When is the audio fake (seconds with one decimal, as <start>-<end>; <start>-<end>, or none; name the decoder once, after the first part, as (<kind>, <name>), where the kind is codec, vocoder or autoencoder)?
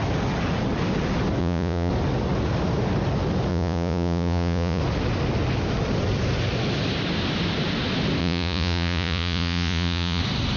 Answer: 1.4-1.9 (vocoder, Vocos); 3.5-4.8; 8.2-10.2